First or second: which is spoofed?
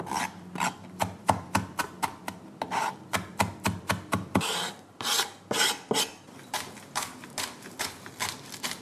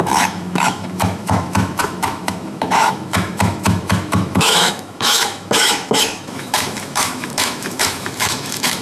second